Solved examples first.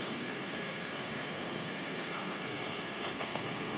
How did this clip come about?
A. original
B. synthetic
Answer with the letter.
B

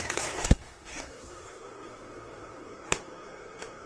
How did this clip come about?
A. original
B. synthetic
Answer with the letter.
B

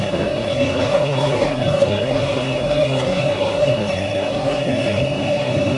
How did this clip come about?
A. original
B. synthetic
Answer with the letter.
B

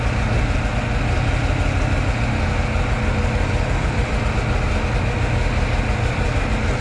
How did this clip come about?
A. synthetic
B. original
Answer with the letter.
B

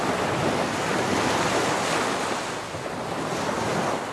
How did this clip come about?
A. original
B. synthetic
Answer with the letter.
A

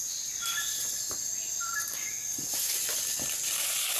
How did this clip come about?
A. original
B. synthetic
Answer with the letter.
A